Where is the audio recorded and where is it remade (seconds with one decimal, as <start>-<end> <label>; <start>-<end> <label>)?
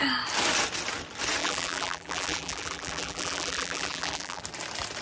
0.0-1.4 recorded; 1.4-4.4 remade; 4.4-5.0 recorded